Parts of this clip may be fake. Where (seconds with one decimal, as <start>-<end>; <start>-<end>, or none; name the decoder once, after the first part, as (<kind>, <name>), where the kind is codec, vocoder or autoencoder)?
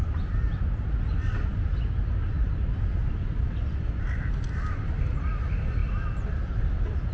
none